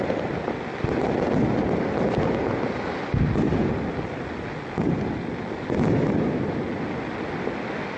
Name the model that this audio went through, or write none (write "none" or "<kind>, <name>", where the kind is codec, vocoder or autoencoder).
none